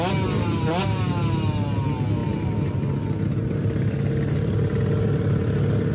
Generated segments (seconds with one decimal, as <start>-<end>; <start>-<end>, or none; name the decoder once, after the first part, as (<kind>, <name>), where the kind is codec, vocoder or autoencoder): none